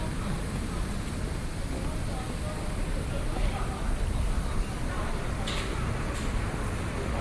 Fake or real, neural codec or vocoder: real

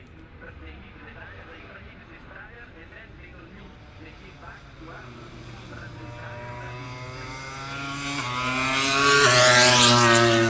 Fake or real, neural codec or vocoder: real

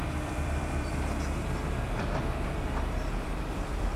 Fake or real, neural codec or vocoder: fake, vocoder, BigVGAN v2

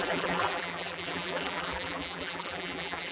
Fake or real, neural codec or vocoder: fake, vocoder, BigVGAN v2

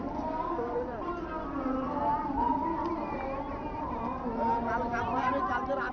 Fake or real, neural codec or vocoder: fake, vocoder, BigVGAN v2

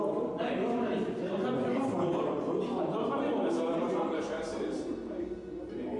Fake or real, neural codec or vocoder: real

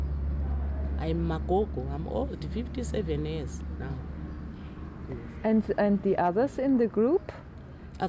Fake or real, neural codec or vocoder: real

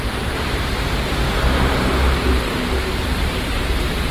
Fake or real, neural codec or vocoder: fake, vocoder, BigVGAN v2